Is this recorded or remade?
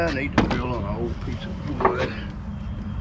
recorded